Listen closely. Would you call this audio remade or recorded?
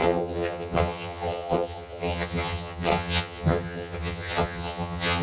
remade